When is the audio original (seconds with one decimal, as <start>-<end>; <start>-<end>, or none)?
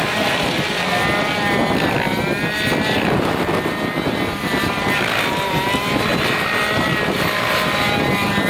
0.0-6.1; 7.2-8.5